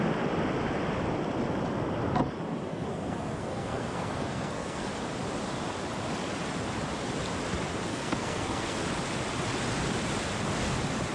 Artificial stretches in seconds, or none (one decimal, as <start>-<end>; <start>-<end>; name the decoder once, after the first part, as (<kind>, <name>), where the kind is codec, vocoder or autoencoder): 2.7-4.9 (codec, SNAC); 7.9-8.8